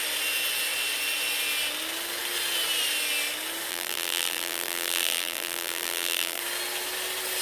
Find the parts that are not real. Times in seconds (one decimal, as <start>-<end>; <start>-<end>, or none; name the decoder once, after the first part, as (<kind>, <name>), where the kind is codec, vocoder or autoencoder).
3.7-6.4 (vocoder, BigVGAN v2)

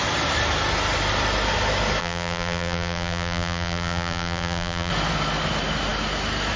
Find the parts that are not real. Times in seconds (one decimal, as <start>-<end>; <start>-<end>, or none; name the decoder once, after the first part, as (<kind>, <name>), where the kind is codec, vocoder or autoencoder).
2.0-4.9 (vocoder, BigVGAN v2)

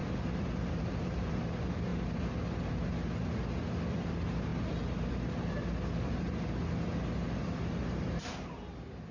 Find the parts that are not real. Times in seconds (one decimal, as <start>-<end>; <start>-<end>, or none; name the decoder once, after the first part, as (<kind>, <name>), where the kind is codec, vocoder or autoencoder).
0.0-1.4 (vocoder, BigVGAN v2); 7.4-8.7

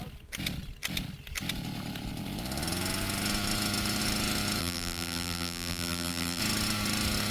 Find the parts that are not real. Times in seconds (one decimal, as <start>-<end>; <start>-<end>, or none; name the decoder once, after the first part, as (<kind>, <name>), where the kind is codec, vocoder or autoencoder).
4.6-6.4 (vocoder, BigVGAN v2)

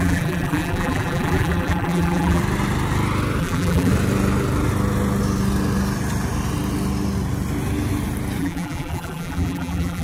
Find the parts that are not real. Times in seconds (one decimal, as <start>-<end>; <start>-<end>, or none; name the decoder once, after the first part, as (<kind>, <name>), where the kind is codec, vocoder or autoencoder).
0.0-2.4 (vocoder, BigVGAN v2); 3.4-3.9; 8.4-10.0

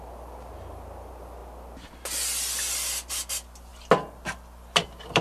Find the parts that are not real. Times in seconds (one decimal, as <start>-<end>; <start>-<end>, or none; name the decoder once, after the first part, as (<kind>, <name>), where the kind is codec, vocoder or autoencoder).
none